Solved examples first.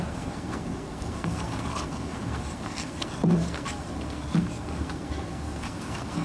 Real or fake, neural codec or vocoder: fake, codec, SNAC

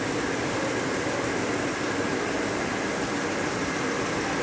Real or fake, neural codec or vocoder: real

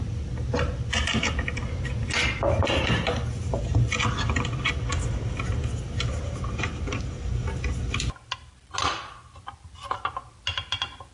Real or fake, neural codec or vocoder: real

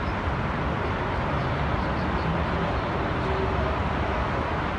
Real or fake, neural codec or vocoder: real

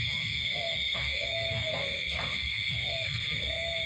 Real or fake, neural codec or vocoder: fake, codec, SNAC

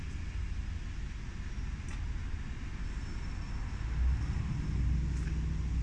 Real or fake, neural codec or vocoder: real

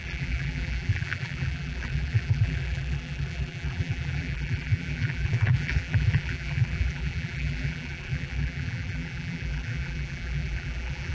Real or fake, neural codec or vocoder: fake, vocoder, BigVGAN v2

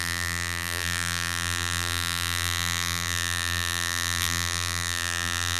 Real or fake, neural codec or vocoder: fake, vocoder, BigVGAN v2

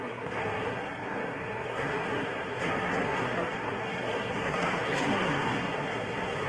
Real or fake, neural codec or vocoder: fake, codec, SNAC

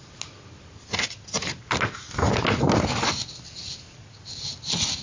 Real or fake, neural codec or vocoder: real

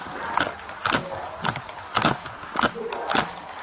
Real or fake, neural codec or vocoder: real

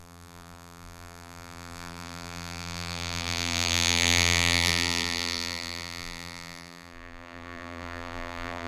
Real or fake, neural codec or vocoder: fake, vocoder, BigVGAN v2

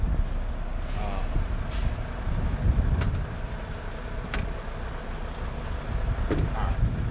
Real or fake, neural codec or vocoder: real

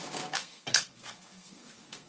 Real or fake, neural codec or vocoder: fake, codec, SNAC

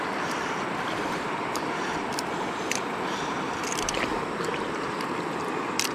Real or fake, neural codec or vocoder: fake, vocoder, BigVGAN v2